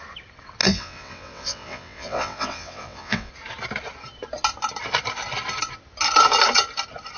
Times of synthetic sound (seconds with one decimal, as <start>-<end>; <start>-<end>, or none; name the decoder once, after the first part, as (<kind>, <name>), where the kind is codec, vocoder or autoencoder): 0.6-3.3 (vocoder, WaveNeXt)